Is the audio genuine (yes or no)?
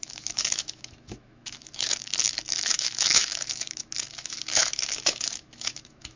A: no